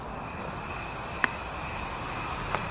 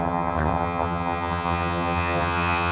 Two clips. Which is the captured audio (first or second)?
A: first